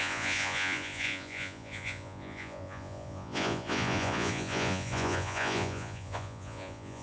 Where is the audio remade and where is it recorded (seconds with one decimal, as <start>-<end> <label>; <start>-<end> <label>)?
0.0-7.0 remade